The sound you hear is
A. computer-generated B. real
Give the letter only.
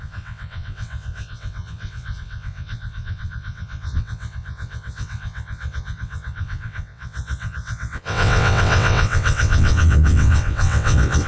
A